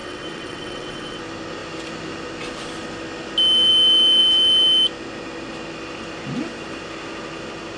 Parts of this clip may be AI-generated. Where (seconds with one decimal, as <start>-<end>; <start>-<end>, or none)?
0.0-1.2